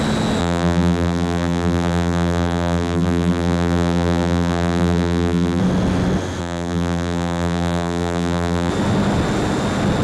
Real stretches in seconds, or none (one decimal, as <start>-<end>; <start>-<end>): 0.0-0.4; 5.6-6.4; 8.7-10.0